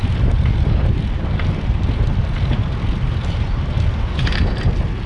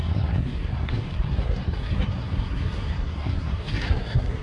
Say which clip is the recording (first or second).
first